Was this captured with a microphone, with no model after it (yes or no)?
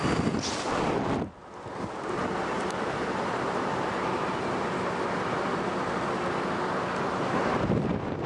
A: yes